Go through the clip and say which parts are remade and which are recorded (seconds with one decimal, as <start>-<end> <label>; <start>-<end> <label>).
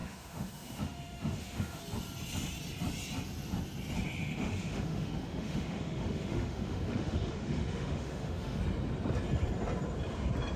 0.0-1.8 remade; 1.8-4.2 recorded; 4.2-8.6 remade; 8.6-10.6 recorded